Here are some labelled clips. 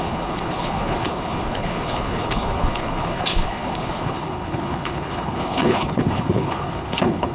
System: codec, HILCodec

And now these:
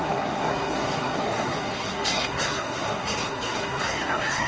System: codec, SNAC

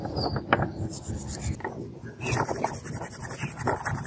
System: none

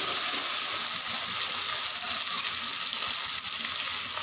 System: none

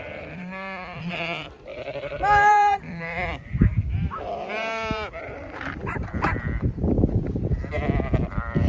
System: vocoder, BigVGAN v2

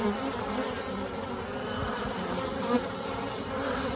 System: none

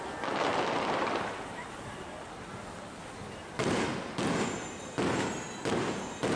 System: none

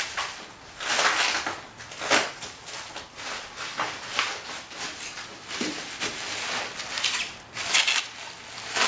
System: none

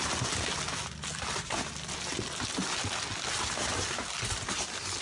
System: none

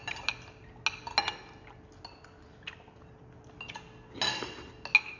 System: none